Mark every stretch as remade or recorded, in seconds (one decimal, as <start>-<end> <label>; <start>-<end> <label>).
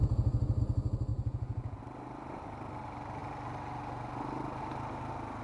0.0-0.6 remade; 0.6-1.1 recorded; 1.1-1.8 remade; 1.8-5.4 recorded